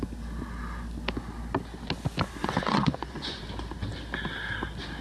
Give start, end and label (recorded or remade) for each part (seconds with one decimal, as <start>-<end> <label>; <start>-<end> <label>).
0.0-2.4 recorded; 2.4-3.4 remade; 3.4-5.0 recorded

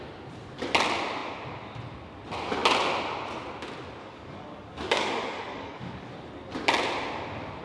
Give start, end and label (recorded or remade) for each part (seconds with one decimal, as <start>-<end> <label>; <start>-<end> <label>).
0.0-4.0 recorded; 4.0-6.1 remade; 6.1-7.6 recorded

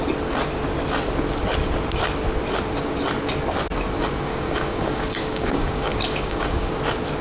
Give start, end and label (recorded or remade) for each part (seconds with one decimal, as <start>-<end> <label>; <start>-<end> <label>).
0.0-4.3 recorded; 4.3-6.8 remade; 6.8-7.2 recorded

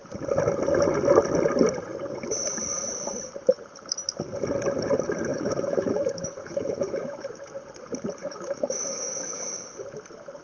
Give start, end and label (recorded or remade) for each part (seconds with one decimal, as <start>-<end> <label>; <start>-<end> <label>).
0.0-5.3 recorded; 5.3-7.3 remade; 7.3-8.2 recorded; 8.2-9.7 remade; 9.7-10.4 recorded